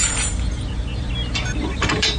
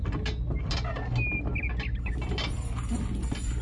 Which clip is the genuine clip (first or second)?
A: second